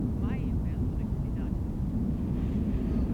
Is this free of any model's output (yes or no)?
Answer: yes